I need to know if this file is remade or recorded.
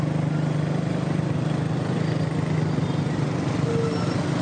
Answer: recorded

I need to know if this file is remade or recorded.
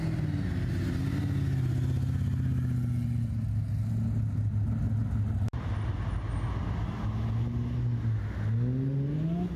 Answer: recorded